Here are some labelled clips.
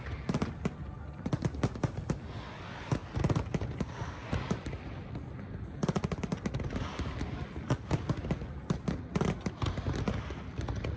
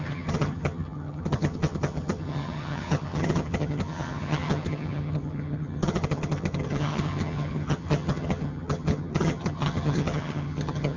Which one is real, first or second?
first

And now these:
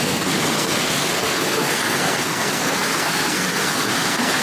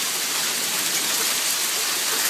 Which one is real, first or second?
second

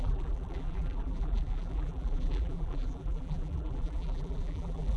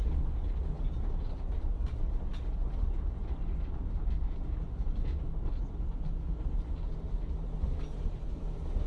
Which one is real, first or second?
second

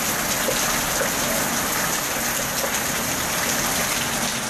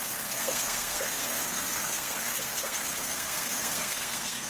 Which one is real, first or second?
first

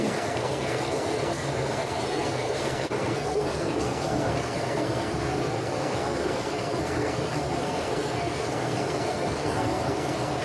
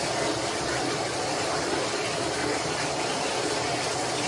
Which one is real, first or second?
second